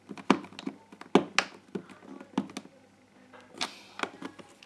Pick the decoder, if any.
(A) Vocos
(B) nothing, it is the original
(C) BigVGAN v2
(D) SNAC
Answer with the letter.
B